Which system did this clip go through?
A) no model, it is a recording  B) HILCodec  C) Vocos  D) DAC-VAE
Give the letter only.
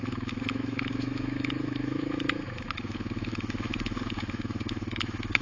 D